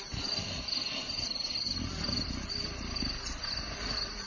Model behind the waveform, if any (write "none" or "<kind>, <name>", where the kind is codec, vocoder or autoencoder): none